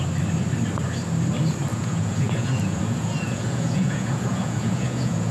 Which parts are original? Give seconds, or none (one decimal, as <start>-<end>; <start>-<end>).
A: 0.0-1.7